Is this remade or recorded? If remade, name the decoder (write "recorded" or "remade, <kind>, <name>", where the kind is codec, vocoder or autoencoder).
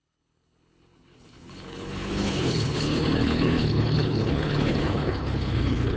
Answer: remade, codec, HILCodec